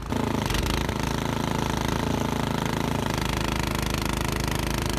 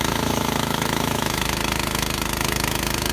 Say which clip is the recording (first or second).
first